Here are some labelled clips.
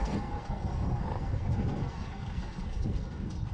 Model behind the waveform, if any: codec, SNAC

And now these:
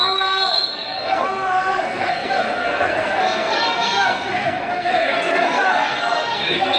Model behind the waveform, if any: codec, SNAC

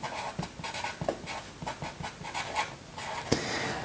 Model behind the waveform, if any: none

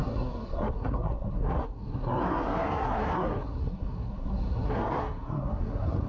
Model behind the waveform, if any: codec, SNAC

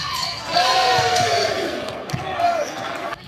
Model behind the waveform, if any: codec, SNAC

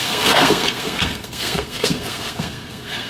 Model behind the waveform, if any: codec, SNAC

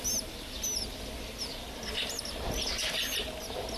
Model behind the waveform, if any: none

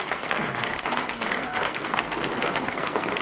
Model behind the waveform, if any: codec, SNAC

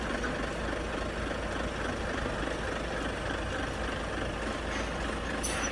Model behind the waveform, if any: none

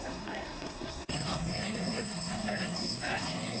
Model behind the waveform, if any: codec, SNAC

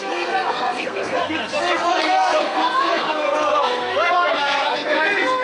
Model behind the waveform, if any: codec, SNAC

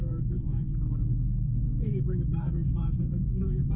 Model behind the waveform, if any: codec, SNAC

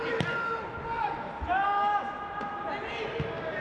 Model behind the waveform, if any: none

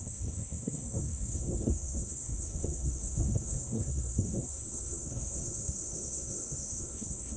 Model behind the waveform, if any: codec, SNAC